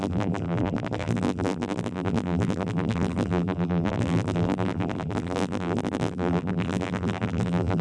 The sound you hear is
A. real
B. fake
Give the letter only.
B